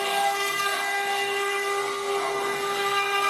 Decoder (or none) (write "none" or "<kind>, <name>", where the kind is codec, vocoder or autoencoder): codec, SNAC